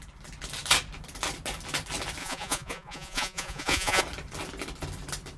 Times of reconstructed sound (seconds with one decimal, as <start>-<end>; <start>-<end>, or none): 2.2-4.0